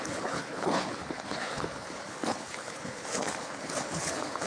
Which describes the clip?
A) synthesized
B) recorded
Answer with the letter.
A